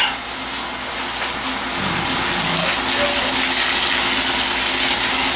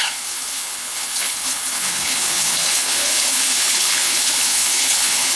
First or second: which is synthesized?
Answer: second